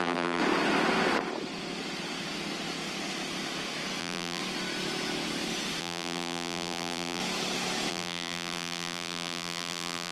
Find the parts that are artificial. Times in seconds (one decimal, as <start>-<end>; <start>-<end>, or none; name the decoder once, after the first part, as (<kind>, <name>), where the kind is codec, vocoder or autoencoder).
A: 0.0-0.4 (vocoder, BigVGAN v2); 4.0-4.4; 5.8-7.2; 7.9-10.1